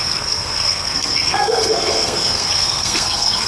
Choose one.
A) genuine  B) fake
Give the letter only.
B